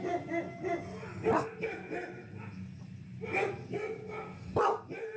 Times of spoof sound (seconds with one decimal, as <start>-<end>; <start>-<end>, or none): none